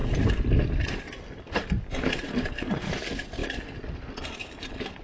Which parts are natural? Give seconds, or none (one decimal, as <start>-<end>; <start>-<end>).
0.0-5.0